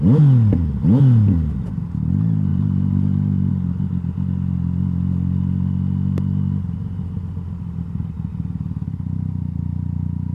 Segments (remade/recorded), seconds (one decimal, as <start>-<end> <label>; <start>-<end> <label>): 0.0-2.5 recorded; 2.5-3.5 remade; 3.5-10.3 recorded